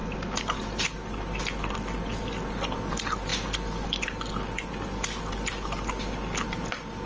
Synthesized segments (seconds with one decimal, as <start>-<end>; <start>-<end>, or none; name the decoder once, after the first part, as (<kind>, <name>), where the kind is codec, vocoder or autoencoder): none